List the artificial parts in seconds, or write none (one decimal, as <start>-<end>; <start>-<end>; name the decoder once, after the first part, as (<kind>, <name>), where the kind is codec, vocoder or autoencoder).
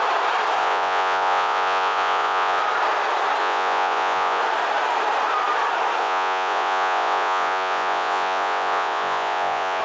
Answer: 0.6-2.6 (vocoder, Vocos); 3.4-4.4; 6.0-9.8